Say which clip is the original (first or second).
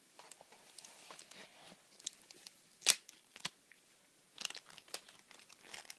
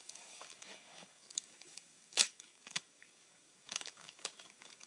first